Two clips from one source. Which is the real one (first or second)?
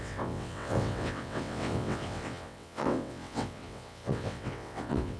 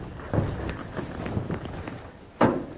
second